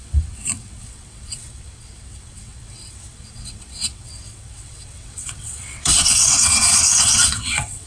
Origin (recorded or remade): remade